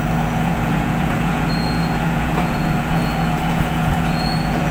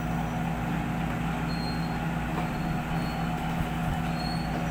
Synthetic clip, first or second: first